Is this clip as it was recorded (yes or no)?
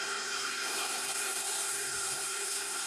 no